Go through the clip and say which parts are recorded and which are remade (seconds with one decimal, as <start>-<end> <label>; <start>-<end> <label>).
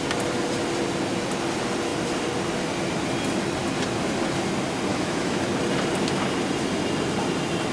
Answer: 0.0-4.9 recorded; 4.9-5.4 remade; 5.4-7.7 recorded